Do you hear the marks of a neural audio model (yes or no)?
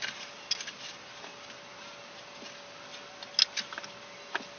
no